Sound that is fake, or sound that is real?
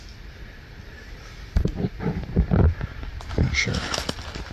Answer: real